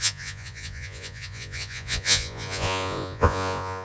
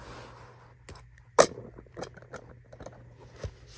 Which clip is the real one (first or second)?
second